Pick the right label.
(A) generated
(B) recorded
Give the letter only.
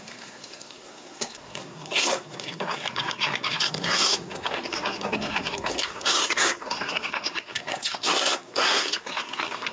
A